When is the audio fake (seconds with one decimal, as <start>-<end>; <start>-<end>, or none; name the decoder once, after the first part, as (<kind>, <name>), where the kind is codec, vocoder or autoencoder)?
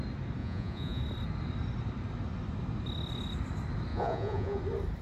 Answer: 0.4-1.0 (vocoder, Vocos); 3.9-4.6